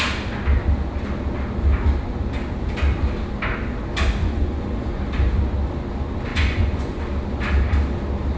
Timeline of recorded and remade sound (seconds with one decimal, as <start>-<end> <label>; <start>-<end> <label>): 0.0-4.2 recorded; 4.2-5.0 remade; 5.0-6.3 recorded; 6.3-7.0 remade; 7.0-8.4 recorded